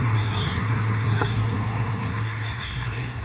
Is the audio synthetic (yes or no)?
yes